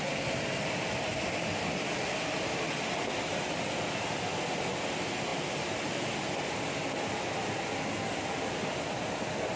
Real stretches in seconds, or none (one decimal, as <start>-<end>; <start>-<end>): 0.0-9.6